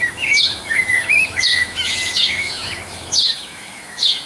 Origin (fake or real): fake